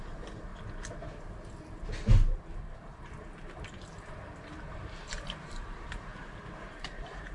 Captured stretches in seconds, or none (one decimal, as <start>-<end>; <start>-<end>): 0.5-2.4; 6.1-6.6